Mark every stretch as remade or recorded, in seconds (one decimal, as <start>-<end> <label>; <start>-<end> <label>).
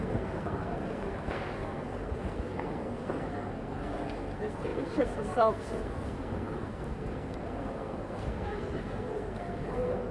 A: 0.0-10.1 remade